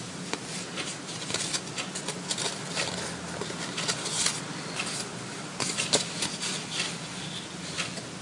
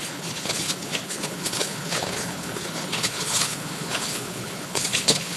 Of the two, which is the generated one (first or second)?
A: second